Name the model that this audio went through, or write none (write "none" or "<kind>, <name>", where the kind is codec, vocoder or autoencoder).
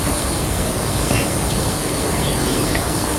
codec, SNAC